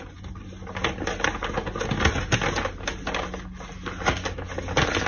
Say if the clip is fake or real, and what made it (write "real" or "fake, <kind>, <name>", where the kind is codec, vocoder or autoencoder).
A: real